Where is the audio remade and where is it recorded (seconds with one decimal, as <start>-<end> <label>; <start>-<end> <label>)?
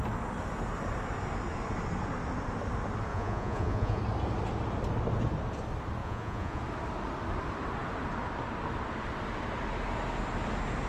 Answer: 0.0-3.1 recorded; 3.1-4.0 remade; 4.0-6.0 recorded; 6.0-6.6 remade; 6.6-10.9 recorded